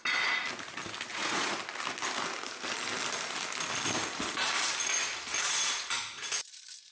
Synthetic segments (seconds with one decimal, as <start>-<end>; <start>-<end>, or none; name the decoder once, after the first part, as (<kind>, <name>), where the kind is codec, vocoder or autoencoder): 1.1-1.6 (vocoder, Vocos)